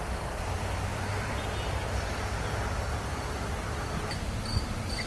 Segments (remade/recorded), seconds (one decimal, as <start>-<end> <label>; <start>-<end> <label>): 0.0-5.1 recorded